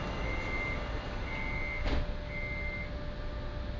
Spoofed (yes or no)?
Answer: no